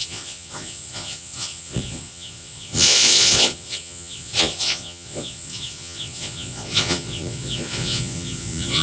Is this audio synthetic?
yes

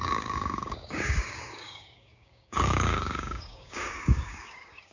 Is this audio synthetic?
yes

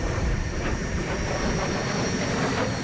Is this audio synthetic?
yes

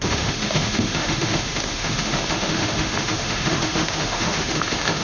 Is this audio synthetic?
yes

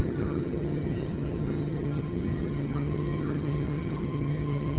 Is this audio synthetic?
yes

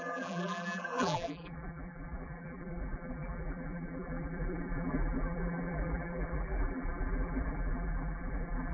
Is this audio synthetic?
yes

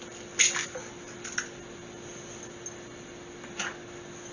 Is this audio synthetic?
no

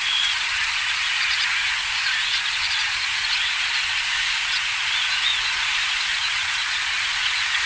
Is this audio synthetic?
yes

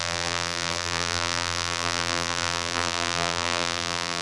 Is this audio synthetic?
yes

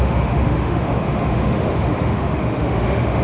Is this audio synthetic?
yes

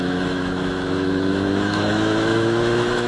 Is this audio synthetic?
yes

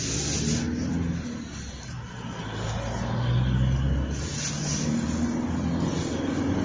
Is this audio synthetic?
no